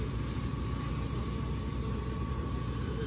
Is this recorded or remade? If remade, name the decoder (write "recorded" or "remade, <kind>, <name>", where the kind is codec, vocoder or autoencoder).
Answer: recorded